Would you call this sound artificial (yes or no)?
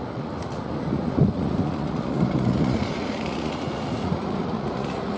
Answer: yes